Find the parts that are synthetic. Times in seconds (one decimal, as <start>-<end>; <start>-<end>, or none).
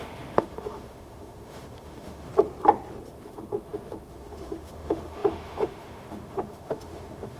0.0-2.3; 3.1-7.4